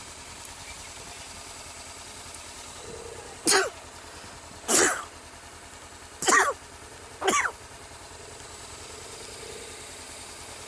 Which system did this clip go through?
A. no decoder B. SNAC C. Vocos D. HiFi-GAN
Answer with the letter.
A